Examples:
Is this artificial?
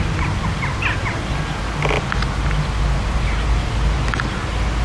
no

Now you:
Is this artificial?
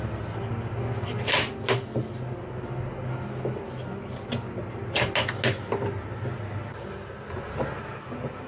no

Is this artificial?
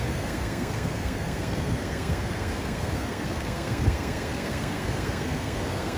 yes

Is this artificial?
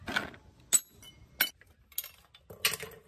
no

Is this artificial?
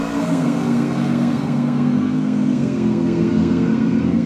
yes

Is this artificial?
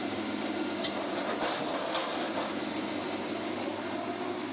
no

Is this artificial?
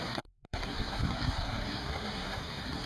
yes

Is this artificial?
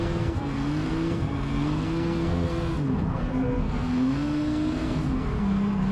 yes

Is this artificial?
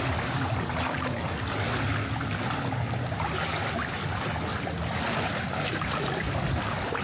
no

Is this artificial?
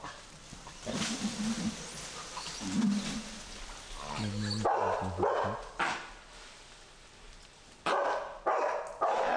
no